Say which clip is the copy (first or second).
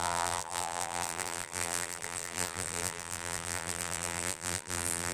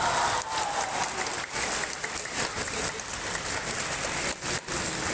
first